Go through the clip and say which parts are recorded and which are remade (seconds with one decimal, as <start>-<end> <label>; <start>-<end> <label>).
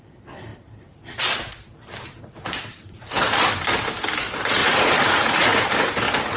0.0-2.7 recorded; 2.7-3.5 remade; 3.5-4.6 recorded; 4.6-5.6 remade; 5.6-6.4 recorded